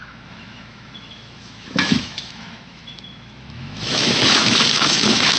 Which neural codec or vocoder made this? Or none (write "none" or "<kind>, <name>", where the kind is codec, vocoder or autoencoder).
autoencoder, DAC-VAE